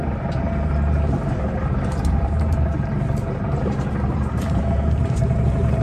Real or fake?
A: fake